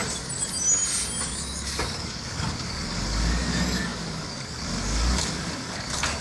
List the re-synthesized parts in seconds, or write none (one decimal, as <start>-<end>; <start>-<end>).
1.2-6.2